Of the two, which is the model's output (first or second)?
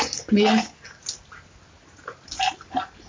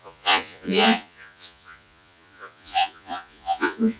second